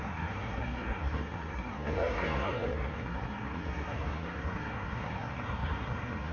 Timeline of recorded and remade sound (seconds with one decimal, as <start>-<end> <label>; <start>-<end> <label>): 0.0-6.3 remade